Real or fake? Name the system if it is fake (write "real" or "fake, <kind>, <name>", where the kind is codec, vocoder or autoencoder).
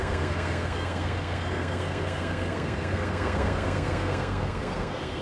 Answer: fake, codec, SNAC